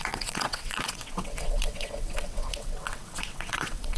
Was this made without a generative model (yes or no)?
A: no